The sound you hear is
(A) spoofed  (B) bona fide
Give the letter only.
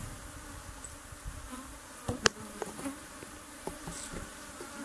B